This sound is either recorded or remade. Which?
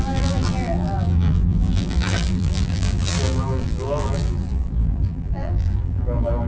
remade